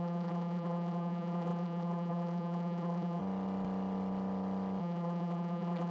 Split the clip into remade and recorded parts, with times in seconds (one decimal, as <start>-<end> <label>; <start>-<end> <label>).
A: 0.0-3.2 remade; 3.2-4.8 recorded; 4.8-5.9 remade